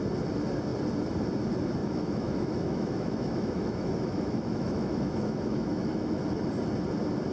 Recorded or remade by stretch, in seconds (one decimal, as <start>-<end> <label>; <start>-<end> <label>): 0.0-1.8 recorded; 1.8-6.2 remade; 6.2-7.3 recorded